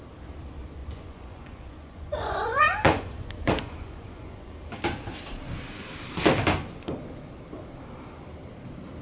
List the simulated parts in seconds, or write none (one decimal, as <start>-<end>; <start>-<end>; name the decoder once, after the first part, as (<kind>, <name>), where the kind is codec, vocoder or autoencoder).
0.8-4.5 (vocoder, Vocos)